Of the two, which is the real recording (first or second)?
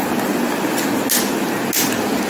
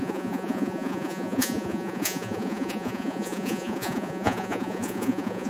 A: first